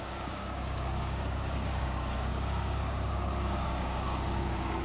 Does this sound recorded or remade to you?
remade